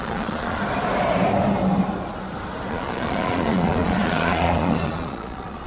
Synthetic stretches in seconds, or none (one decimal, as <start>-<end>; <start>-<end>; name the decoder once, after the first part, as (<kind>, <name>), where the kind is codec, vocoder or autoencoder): 0.0-0.6 (vocoder, Vocos); 2.7-5.7